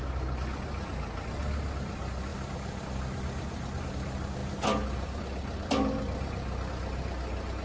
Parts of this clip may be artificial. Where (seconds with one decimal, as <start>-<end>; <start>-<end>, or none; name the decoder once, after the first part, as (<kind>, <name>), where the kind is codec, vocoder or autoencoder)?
none